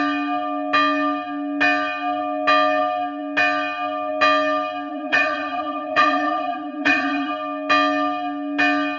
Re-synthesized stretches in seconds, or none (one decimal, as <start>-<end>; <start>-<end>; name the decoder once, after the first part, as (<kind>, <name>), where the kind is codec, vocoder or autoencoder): 4.9-7.3 (vocoder, Vocos)